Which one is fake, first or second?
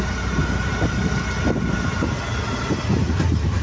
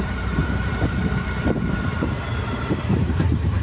second